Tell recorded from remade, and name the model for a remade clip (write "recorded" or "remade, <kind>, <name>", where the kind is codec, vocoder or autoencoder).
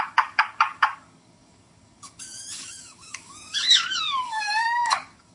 remade, codec, DAC